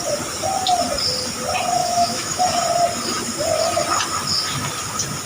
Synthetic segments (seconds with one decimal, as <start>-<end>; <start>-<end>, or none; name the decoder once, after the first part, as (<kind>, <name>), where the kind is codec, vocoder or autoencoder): 1.8-2.4 (autoencoder, DAC-VAE)